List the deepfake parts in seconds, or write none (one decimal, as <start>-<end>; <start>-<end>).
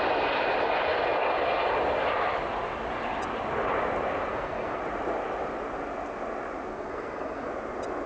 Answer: 4.3-4.8; 6.7-7.5